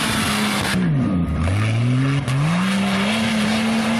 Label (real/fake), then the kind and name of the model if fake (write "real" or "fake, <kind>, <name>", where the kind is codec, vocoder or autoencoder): real